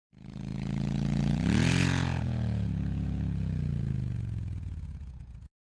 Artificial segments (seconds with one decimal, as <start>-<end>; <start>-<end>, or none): 0.0-5.7